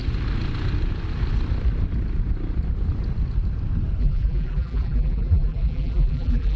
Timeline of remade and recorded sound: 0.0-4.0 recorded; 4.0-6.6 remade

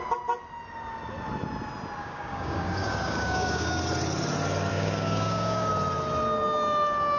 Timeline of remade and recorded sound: 0.0-2.0 recorded; 2.0-3.8 remade; 3.8-4.7 recorded; 4.7-5.7 remade; 5.7-7.2 recorded

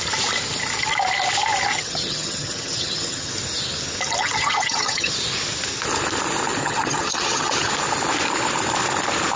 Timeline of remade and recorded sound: 0.0-1.7 recorded; 1.7-3.3 remade; 3.3-4.2 recorded; 4.2-5.1 remade; 5.1-6.6 recorded; 6.6-7.7 remade; 7.7-9.4 recorded

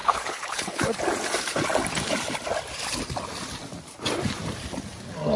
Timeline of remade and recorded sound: 0.0-1.0 remade; 1.0-5.4 recorded

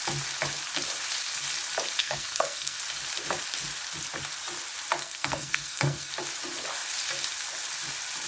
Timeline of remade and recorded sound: 0.0-2.0 recorded; 2.0-2.8 remade; 2.8-5.0 recorded; 5.0-6.1 remade; 6.1-8.3 recorded

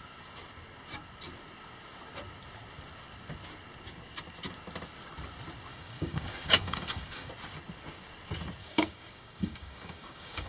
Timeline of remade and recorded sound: 0.0-5.7 recorded; 5.7-7.3 remade; 7.3-8.6 recorded; 8.6-10.5 remade